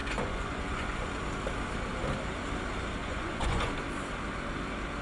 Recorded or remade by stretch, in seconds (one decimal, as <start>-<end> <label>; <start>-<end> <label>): 0.0-1.1 remade; 1.1-3.0 recorded; 3.0-3.7 remade; 3.7-5.0 recorded